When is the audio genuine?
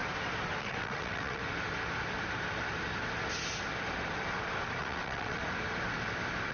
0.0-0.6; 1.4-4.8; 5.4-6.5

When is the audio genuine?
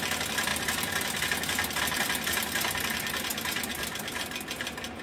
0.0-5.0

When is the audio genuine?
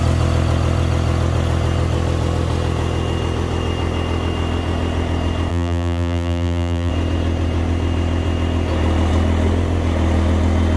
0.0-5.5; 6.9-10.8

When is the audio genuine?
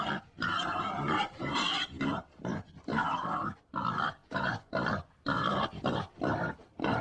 2.9-3.6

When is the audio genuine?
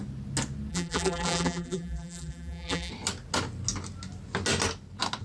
0.0-0.7; 2.9-5.2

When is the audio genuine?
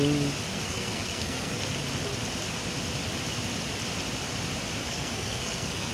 0.0-0.5; 1.6-4.8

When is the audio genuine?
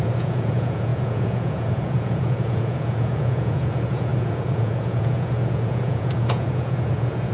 none